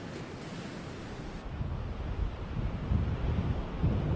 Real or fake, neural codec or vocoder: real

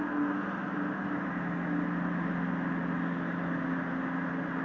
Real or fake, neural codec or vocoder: real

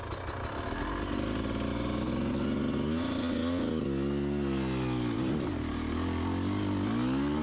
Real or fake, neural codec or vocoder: real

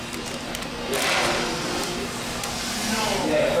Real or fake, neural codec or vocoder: real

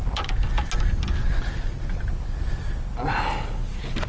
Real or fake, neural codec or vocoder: real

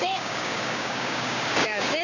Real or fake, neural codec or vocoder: fake, codec, DAC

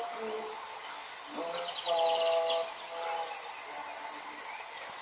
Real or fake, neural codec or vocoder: real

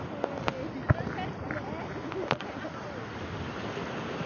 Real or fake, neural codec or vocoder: real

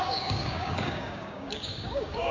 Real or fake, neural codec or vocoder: fake, codec, DAC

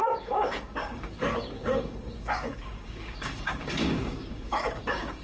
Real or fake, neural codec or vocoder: fake, codec, DAC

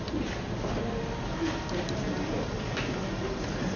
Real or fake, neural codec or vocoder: real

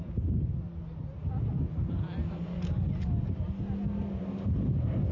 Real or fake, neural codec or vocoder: real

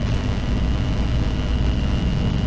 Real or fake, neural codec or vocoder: real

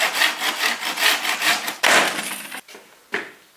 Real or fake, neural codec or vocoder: real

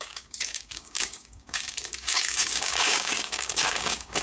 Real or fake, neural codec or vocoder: fake, codec, DAC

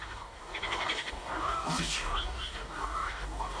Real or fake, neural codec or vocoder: fake, codec, DAC